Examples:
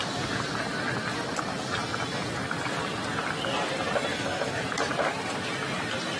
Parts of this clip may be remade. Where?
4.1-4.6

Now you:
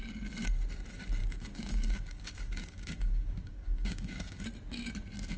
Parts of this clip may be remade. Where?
1.2-4.4

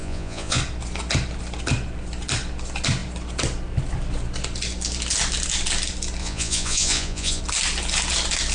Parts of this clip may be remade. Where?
0.0-0.6; 6.2-7.4

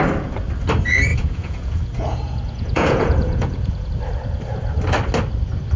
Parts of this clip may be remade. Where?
1.1-3.9

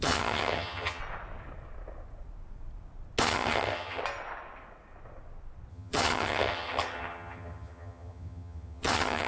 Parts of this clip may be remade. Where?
0.0-1.0; 3.2-4.0; 5.7-9.3

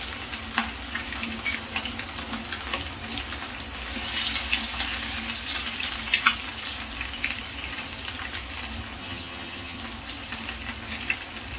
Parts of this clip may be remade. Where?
9.0-9.8

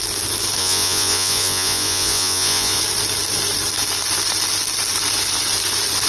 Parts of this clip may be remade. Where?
0.6-2.8